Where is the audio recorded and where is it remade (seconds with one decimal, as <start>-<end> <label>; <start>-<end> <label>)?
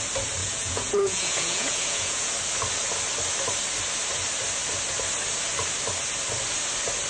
0.0-0.4 recorded; 0.4-2.3 remade; 2.3-7.1 recorded